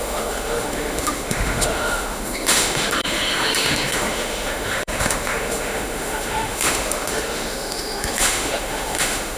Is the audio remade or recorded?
remade